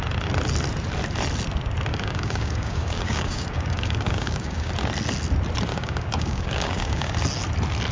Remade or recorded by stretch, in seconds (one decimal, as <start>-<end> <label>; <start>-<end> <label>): 0.0-1.9 recorded; 1.9-4.7 remade; 4.7-5.7 recorded; 5.7-7.1 remade; 7.1-7.9 recorded